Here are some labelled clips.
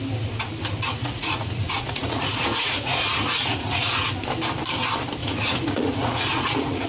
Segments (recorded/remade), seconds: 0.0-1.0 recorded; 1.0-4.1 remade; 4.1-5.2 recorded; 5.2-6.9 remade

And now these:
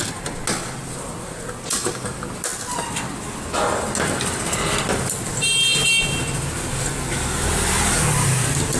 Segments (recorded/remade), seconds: 0.0-8.8 recorded

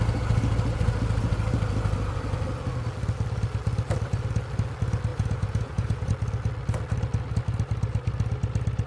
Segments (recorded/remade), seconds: 0.0-5.1 recorded; 5.1-6.1 remade; 6.1-8.9 recorded

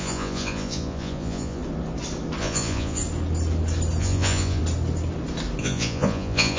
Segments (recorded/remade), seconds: 0.0-1.6 remade; 1.6-2.4 recorded; 2.4-3.0 remade; 3.0-4.0 recorded; 4.0-4.6 remade; 4.6-5.6 recorded; 5.6-6.6 remade